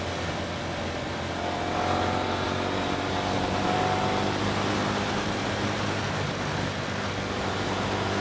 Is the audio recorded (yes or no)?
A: yes